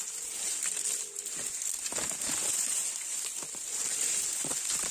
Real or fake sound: real